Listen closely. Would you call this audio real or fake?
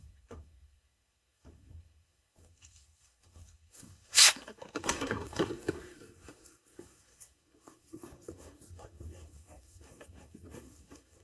fake